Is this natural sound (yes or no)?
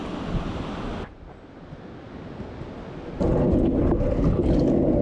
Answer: yes